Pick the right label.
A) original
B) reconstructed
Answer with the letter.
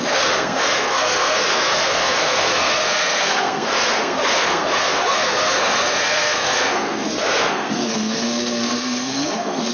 B